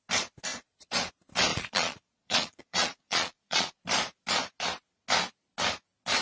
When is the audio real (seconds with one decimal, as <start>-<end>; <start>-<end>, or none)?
0.0-1.5; 3.8-6.2